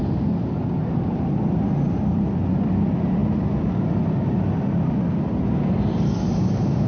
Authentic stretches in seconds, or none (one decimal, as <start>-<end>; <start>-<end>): 0.0-6.9